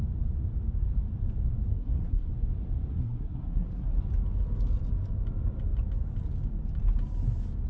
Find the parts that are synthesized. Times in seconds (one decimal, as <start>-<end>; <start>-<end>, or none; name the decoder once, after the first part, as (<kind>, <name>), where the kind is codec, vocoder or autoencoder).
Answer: 1.7-2.3 (codec, SNAC); 2.9-4.0